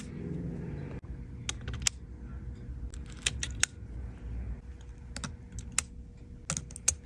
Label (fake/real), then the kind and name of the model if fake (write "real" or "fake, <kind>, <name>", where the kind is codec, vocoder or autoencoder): real